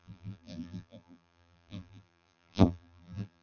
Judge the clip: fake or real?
fake